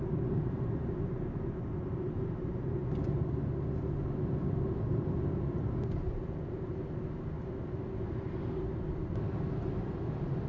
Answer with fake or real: real